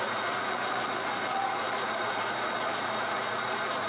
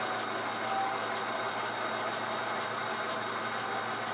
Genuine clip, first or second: second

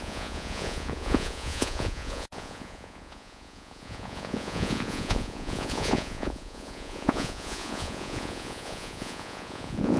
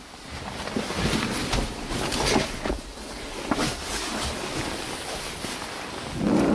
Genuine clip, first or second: second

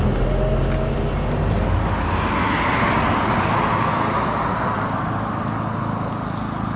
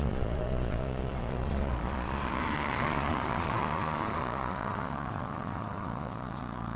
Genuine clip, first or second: first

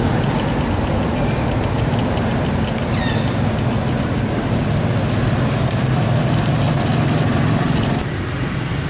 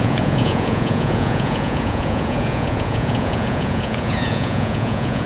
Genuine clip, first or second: first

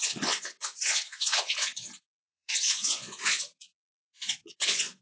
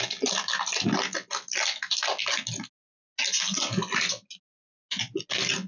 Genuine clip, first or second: second